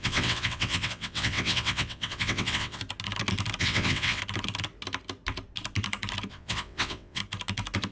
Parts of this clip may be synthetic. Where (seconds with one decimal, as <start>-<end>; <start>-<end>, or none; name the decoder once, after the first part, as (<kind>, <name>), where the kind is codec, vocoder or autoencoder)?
0.0-2.8 (vocoder, WaveNeXt); 3.6-4.2; 6.3-7.2